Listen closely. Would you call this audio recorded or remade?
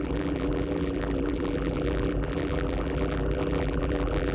remade